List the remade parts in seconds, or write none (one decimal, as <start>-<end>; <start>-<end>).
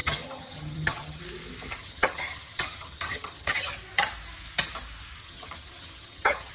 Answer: 0.0-1.2; 1.8-3.7; 5.2-6.5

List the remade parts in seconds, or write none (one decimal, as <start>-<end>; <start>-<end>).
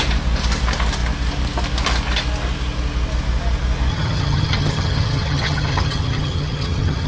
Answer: 3.9-7.1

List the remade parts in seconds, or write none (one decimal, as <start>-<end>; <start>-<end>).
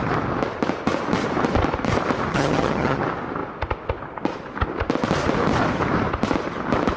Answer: 2.3-3.0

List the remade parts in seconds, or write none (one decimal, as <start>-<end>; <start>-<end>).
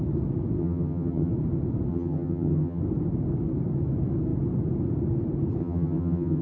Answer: 0.6-1.3; 1.9-2.8; 5.6-6.4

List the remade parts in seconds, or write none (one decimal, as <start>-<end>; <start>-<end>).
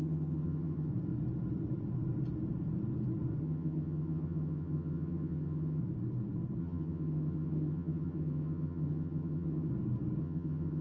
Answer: 0.0-0.9; 3.4-5.8; 6.6-9.7; 10.2-10.8